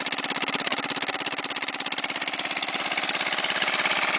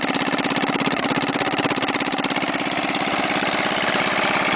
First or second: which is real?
first